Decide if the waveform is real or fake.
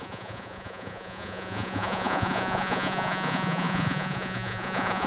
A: fake